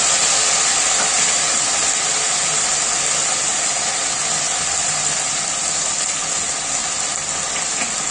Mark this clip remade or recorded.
recorded